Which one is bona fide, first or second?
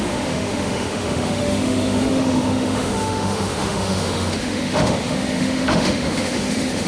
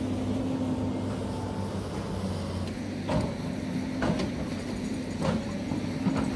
second